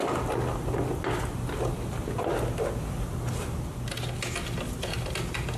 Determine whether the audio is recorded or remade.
recorded